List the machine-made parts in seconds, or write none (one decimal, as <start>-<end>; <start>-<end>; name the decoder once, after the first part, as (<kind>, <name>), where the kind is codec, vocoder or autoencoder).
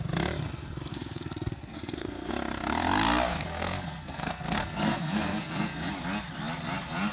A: 0.9-2.3 (codec, SNAC); 3.3-5.9